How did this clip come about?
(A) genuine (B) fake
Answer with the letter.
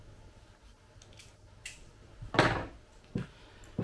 A